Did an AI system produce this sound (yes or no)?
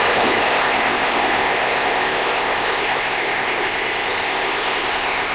yes